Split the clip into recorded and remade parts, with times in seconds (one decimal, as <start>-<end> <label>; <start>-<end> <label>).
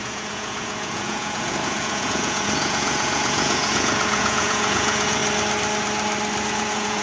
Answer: 0.0-5.2 remade; 5.2-6.5 recorded; 6.5-7.0 remade